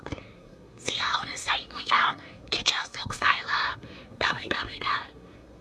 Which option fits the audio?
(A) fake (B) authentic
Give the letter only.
A